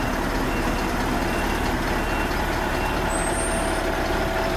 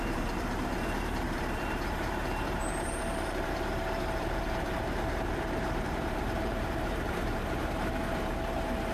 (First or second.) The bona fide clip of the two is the first